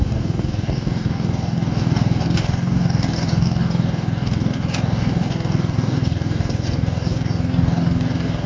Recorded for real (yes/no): no